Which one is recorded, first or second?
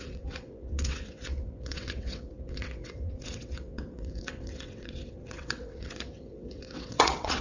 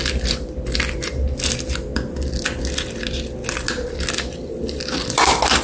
second